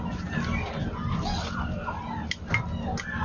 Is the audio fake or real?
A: real